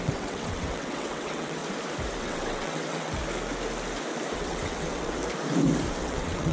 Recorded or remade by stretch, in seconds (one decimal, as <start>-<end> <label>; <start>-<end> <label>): 0.0-1.6 remade; 1.6-2.2 recorded; 2.2-3.2 remade; 3.2-4.3 recorded; 4.3-5.2 remade; 5.2-5.9 recorded; 5.9-6.5 remade